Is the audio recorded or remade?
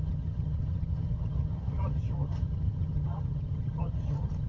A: remade